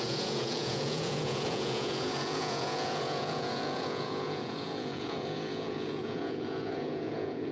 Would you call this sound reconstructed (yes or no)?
yes